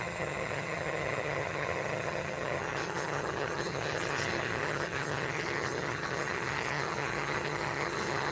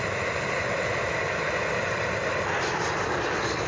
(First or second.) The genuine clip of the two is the second